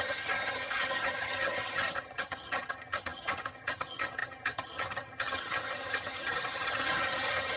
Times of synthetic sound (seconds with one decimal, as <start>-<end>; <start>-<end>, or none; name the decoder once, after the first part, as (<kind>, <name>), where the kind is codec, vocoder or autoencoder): 0.0-7.6 (vocoder, HiFi-GAN)